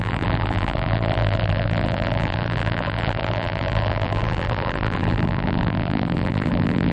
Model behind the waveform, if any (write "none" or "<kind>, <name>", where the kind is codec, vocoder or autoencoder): vocoder, BigVGAN v2